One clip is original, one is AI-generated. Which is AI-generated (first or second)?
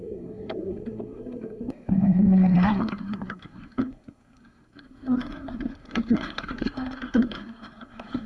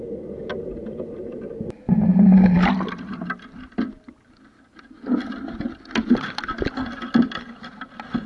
first